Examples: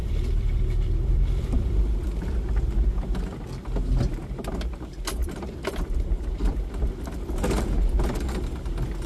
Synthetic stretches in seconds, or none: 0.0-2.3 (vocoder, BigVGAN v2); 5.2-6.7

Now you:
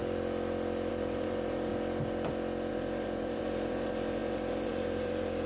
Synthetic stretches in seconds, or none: 0.9-1.7 (vocoder, BigVGAN v2); 2.7-5.5

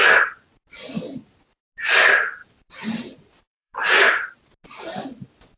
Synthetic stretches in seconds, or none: 2.4-3.8 (vocoder, BigVGAN v2)